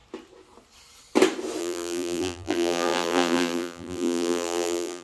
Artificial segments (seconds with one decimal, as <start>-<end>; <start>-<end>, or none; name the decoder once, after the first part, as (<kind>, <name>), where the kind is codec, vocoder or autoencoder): 1.6-5.0 (vocoder, BigVGAN v2)